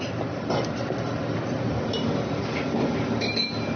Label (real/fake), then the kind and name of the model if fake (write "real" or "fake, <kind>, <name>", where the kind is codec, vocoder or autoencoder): real